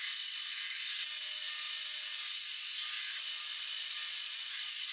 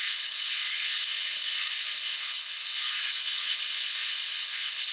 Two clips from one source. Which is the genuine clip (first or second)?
first